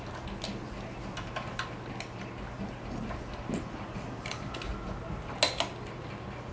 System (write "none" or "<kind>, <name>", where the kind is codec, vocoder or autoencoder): none